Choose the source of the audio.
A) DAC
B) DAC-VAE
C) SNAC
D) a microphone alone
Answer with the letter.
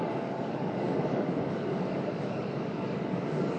A